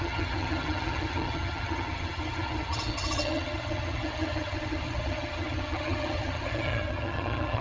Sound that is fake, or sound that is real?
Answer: fake